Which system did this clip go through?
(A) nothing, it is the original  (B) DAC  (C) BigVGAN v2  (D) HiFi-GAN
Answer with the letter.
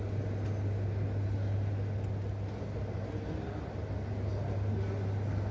A